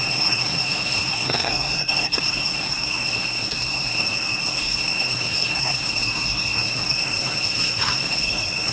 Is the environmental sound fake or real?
fake